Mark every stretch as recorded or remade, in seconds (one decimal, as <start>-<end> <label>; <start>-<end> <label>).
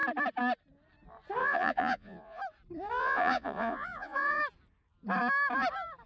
0.0-1.4 recorded; 1.4-2.4 remade; 2.4-3.0 recorded; 3.0-4.4 remade; 4.4-6.1 recorded